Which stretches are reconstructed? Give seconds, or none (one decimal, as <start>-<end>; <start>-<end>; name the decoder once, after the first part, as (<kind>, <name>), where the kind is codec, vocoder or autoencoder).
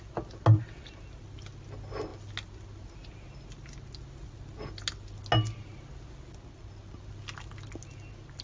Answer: none